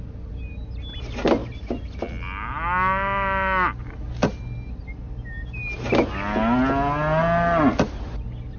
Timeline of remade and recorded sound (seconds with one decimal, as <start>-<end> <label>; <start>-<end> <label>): 0.0-8.6 recorded